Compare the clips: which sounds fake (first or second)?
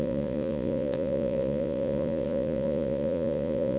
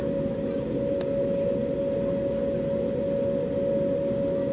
first